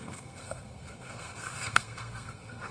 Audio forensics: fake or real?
fake